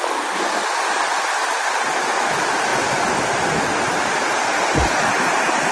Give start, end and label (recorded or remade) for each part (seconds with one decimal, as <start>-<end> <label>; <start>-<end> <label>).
0.0-5.7 recorded